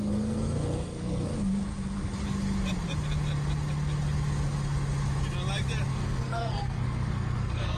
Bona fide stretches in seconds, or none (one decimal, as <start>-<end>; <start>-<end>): 1.3-5.9